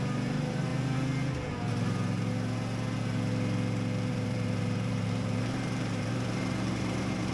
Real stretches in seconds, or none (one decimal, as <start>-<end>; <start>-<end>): 0.7-4.1